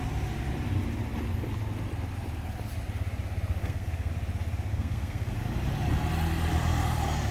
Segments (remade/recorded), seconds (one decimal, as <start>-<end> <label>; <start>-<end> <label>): 0.0-3.6 recorded; 3.6-4.1 remade; 4.1-4.7 recorded; 4.7-5.3 remade; 5.3-7.3 recorded